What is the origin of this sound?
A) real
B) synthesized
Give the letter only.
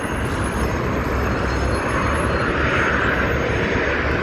A